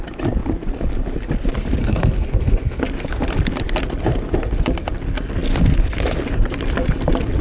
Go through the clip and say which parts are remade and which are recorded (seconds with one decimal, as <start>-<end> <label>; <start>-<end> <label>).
0.0-1.8 recorded; 1.8-2.8 remade; 2.8-7.4 recorded